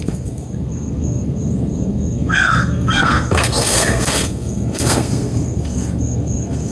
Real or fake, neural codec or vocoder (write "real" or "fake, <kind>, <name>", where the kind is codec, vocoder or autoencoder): fake, codec, SNAC